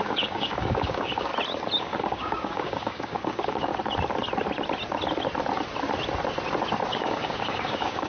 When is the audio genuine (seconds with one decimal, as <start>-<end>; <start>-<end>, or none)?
1.3-1.8; 3.7-6.9